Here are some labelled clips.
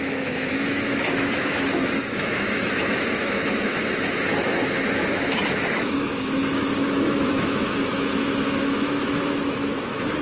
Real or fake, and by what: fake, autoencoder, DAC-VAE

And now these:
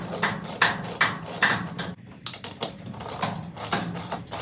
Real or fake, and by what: real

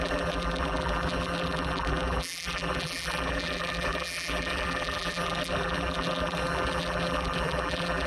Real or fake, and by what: fake, vocoder, BigVGAN v2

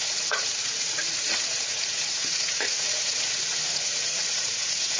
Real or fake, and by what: fake, vocoder, Vocos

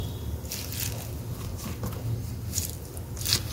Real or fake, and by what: real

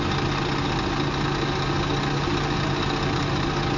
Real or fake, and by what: real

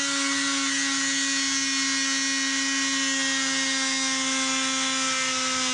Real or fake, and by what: real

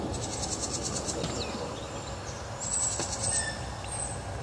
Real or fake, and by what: real